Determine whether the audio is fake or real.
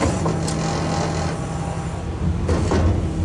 real